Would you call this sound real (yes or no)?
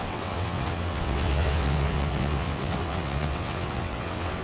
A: no